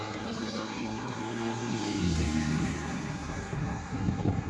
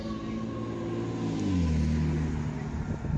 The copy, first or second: first